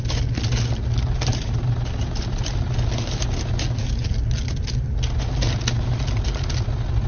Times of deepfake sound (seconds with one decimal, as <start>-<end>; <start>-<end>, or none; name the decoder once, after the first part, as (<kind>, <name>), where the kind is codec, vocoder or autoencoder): 1.3-2.2 (vocoder, BigVGAN v2)

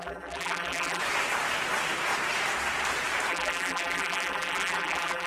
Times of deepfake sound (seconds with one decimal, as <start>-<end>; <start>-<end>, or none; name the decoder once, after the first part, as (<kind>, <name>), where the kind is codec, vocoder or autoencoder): 0.0-1.0 (vocoder, BigVGAN v2); 3.3-5.3